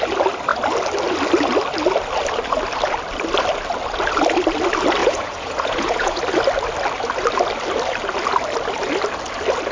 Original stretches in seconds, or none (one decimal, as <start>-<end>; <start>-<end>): 0.0-5.0; 6.2-9.7